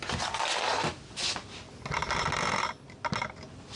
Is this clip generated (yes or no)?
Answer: no